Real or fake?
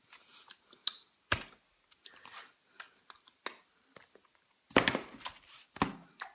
real